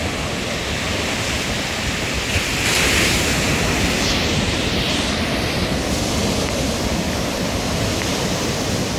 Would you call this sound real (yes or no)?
yes